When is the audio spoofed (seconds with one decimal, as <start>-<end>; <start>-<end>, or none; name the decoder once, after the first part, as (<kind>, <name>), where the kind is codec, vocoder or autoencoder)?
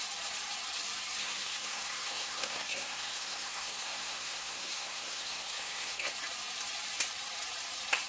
1.2-6.1 (codec, SNAC)